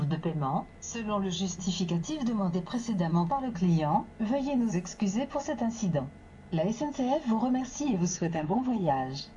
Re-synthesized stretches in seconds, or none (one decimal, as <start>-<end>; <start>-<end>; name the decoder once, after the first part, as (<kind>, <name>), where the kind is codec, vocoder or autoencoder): 8.1-8.9 (codec, HILCodec)